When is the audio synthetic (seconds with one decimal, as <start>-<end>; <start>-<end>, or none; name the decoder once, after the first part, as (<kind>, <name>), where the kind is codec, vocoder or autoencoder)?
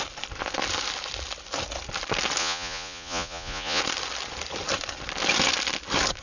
2.4-3.8 (vocoder, Vocos)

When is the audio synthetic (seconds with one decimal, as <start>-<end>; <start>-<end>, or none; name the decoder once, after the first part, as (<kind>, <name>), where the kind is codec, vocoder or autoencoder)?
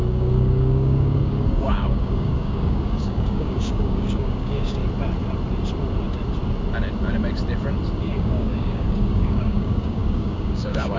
0.0-4.8 (codec, DAC); 8.0-11.0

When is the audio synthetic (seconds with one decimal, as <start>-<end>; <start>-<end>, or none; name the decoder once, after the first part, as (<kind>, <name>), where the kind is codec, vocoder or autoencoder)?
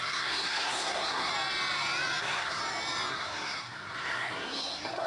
0.0-1.3 (codec, SNAC); 2.2-2.6; 3.1-5.1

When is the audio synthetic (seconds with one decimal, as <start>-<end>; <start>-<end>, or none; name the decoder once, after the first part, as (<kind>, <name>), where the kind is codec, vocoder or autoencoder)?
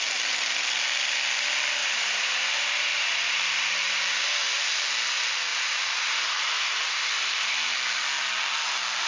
1.8-4.7 (vocoder, BigVGAN v2); 5.5-7.4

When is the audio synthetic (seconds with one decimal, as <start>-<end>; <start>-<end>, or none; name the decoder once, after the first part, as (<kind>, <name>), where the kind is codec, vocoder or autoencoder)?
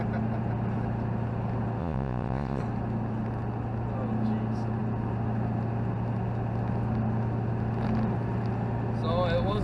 1.8-2.6 (vocoder, Vocos)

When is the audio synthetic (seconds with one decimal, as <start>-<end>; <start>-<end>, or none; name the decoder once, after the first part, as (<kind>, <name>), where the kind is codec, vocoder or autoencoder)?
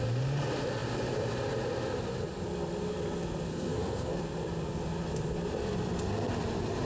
3.5-4.2 (codec, SNAC)